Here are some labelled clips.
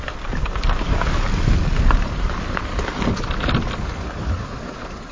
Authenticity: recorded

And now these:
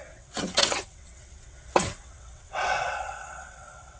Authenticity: remade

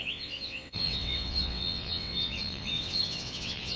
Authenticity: remade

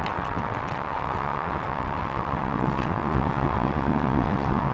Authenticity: remade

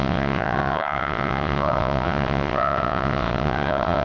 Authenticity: remade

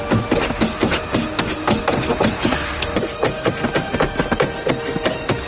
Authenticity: recorded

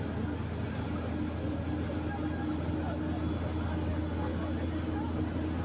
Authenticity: recorded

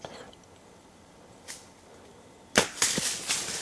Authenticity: recorded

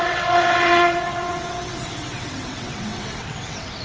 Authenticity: remade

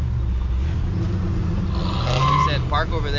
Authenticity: recorded